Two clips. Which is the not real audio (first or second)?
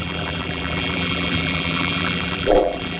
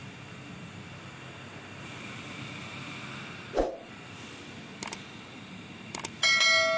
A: first